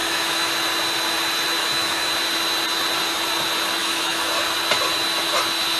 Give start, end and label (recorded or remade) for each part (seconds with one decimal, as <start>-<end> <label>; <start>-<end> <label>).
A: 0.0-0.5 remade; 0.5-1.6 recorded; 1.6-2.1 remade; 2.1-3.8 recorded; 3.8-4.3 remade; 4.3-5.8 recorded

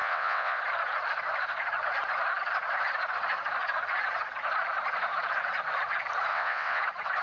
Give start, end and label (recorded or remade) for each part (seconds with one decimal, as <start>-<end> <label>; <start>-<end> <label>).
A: 0.0-0.6 remade; 0.6-6.3 recorded; 6.3-6.8 remade; 6.8-7.2 recorded

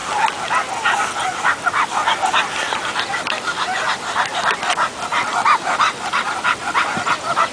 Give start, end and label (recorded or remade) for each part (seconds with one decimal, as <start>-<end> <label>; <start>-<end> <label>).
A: 0.0-7.5 recorded

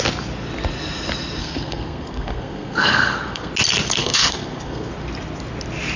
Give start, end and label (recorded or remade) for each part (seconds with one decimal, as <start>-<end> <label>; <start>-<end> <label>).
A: 0.0-1.4 recorded; 1.4-3.5 remade; 3.5-4.0 recorded; 4.0-4.9 remade; 4.9-6.0 recorded